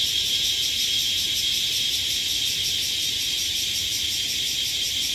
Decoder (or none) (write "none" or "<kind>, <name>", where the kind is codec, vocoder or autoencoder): none